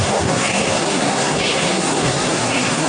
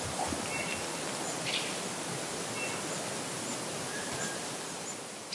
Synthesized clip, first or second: first